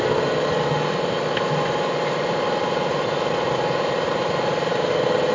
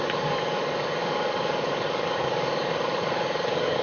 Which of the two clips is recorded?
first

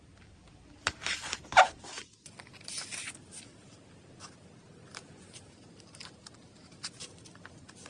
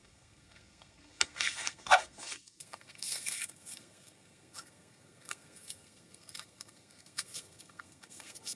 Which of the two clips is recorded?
first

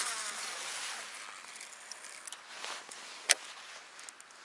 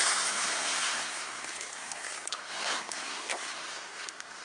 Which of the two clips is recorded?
first